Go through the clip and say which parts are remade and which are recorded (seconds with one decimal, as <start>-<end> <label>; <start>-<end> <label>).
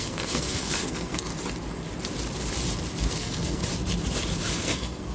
0.0-1.3 remade; 1.3-3.0 recorded; 3.0-3.6 remade; 3.6-4.5 recorded; 4.5-5.1 remade